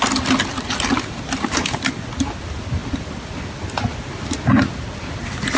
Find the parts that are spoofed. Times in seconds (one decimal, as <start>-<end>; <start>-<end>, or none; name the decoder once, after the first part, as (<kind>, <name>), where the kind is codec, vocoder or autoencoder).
none

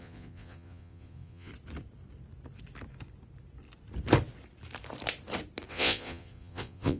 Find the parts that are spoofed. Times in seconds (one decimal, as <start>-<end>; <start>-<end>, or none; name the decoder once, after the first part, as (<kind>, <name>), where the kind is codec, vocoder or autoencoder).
0.0-1.5 (vocoder, Vocos); 5.7-7.0

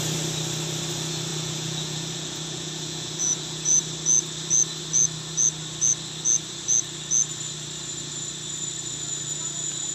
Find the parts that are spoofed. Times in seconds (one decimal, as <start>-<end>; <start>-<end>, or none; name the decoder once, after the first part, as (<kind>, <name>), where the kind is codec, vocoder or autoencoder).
1.3-3.8 (vocoder, Vocos)

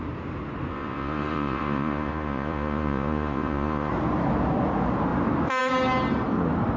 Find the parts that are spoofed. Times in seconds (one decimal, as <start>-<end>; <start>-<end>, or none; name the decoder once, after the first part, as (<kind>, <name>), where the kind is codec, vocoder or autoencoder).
0.7-3.9 (vocoder, Vocos)

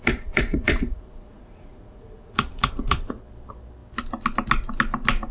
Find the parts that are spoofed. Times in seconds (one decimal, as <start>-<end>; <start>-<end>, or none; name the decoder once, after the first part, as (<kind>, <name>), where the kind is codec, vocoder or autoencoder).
0.0-3.2 (vocoder, Vocos)